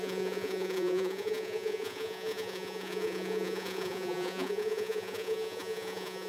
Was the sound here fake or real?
fake